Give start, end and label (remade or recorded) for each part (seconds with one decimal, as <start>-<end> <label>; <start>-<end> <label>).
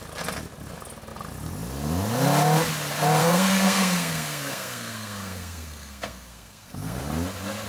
0.0-3.2 recorded; 3.2-7.0 remade; 7.0-7.7 recorded